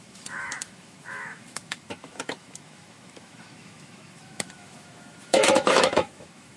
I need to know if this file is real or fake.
fake